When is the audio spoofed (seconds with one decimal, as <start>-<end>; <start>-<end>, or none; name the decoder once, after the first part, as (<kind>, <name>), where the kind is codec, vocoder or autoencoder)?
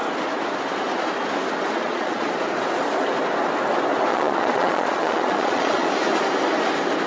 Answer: 1.8-2.3 (vocoder, Vocos); 4.1-5.9